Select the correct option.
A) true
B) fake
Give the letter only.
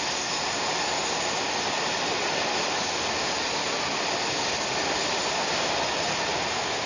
A